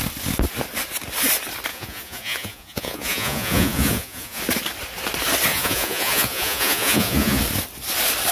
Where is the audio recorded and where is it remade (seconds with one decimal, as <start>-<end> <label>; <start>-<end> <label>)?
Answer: 0.0-1.7 recorded; 1.7-4.4 remade; 4.4-5.5 recorded; 5.5-7.4 remade; 7.4-8.3 recorded